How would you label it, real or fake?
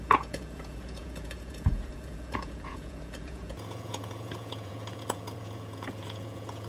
fake